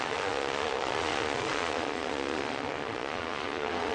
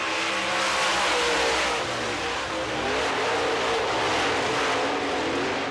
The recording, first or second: second